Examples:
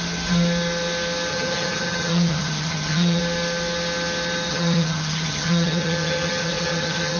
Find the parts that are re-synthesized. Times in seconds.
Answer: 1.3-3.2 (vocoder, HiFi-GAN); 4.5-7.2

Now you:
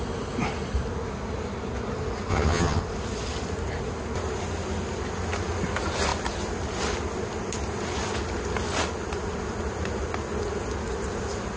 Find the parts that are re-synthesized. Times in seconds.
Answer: 2.3-2.8 (vocoder, HiFi-GAN)

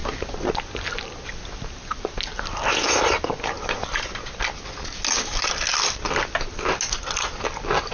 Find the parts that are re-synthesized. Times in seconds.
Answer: none

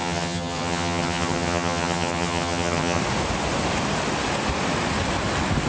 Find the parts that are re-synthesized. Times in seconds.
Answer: 0.0-3.0 (vocoder, HiFi-GAN)

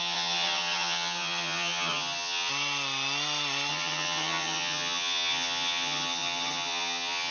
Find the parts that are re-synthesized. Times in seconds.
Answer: 0.0-2.5 (vocoder, HiFi-GAN); 3.7-7.3

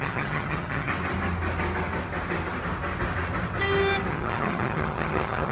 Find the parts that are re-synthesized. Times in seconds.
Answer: 0.0-0.9 (vocoder, HiFi-GAN); 4.1-5.5

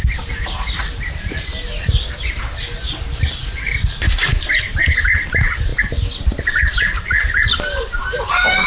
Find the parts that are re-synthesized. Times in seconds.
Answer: none